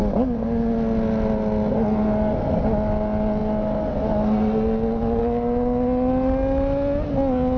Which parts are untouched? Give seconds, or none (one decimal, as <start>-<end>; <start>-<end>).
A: 0.0-7.6